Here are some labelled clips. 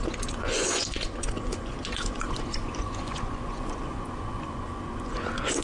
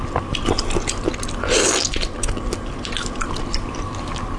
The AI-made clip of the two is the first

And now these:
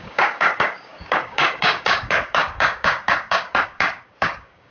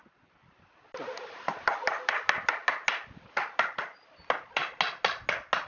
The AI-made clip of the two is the first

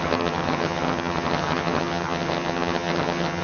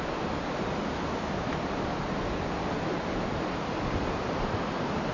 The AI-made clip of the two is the first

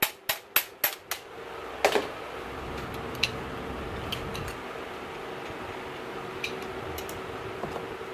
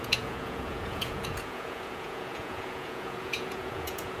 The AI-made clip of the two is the second